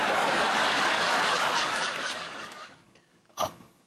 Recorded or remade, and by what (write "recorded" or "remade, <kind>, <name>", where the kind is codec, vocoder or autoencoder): remade, codec, DAC